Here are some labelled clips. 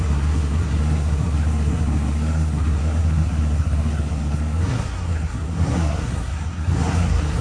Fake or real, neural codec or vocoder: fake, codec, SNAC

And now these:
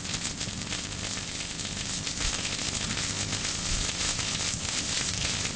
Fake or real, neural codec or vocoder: fake, codec, ZipCodec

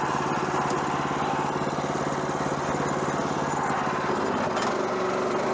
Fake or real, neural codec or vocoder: real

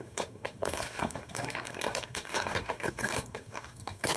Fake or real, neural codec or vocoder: fake, codec, SNAC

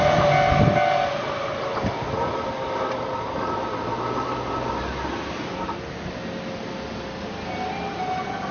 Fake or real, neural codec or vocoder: real